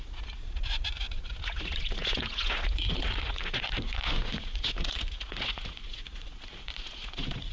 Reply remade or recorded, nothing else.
remade